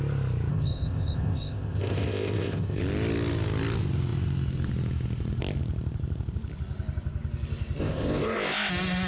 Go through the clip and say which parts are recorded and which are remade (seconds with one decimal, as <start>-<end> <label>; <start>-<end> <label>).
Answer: 0.0-0.5 recorded; 0.5-2.8 remade; 2.8-7.8 recorded; 7.8-8.7 remade; 8.7-9.1 recorded